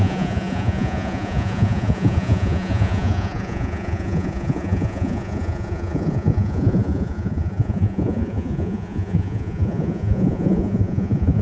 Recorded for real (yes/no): no